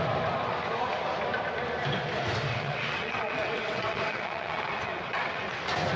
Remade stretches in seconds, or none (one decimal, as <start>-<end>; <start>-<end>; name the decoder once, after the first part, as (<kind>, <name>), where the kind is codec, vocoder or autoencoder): 2.5-5.6 (vocoder, WaveNeXt)